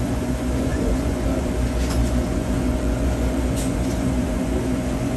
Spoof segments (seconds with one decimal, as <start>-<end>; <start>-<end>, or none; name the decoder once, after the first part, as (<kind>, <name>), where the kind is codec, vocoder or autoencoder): 0.0-5.2 (vocoder, Vocos)